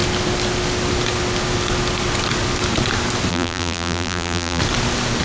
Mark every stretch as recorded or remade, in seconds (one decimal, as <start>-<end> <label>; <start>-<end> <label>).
0.0-3.3 recorded; 3.3-4.6 remade; 4.6-5.2 recorded